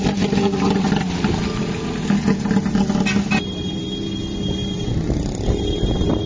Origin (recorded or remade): recorded